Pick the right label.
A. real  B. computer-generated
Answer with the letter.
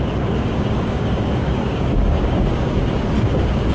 B